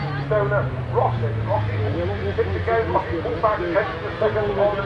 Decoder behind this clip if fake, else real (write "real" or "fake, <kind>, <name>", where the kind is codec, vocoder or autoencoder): real